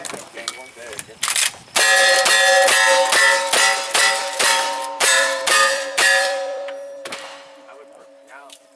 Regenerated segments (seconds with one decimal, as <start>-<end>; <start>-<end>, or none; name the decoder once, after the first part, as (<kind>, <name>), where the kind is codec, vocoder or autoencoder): 4.2-8.8 (vocoder, BigVGAN v2)

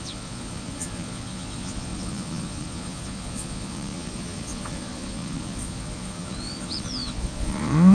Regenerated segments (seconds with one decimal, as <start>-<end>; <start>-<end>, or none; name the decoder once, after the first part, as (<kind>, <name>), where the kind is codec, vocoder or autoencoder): 0.0-7.9 (vocoder, Vocos)

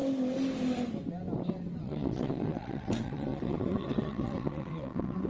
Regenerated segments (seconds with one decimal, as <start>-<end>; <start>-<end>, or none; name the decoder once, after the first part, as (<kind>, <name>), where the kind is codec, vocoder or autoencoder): 1.8-5.3 (vocoder, WaveNeXt)

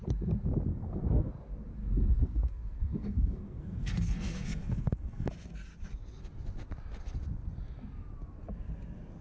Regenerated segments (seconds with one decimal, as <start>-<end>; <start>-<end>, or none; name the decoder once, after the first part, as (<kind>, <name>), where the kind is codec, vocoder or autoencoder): 0.7-1.3 (codec, SNAC); 1.8-5.3